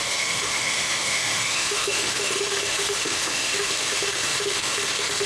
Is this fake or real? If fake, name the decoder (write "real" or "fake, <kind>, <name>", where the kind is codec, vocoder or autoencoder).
fake, autoencoder, DAC-VAE